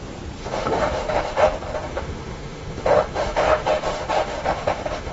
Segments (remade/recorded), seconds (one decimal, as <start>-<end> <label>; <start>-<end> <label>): 0.0-0.4 recorded; 0.4-1.4 remade; 1.4-1.9 recorded; 1.9-5.1 remade